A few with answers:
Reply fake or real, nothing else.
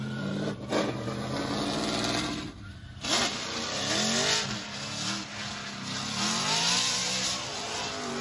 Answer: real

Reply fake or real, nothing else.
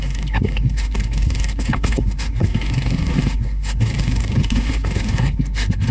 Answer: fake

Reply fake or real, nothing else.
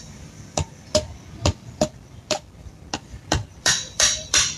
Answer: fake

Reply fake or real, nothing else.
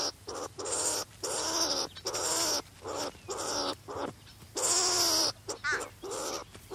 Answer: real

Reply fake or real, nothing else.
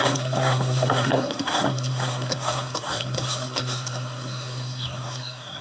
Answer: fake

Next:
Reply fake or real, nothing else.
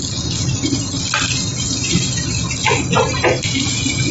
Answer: real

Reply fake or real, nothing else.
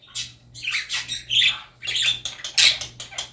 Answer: real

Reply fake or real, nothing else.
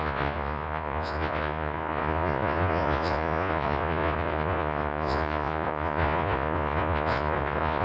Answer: fake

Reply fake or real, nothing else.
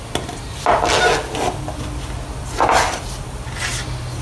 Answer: real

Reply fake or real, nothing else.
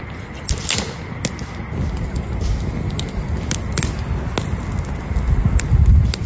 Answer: real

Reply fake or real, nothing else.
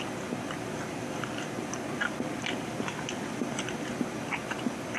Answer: real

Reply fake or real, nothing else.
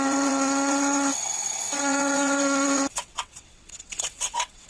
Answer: fake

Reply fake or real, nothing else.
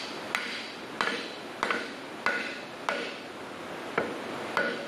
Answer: real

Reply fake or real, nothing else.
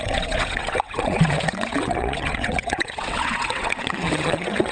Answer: fake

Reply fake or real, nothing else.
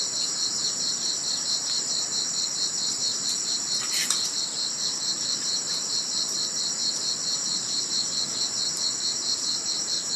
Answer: fake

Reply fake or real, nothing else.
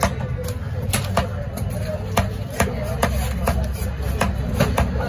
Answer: real